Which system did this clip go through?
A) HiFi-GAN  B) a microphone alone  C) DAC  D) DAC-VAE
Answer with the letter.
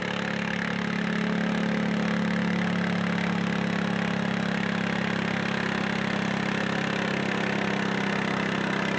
B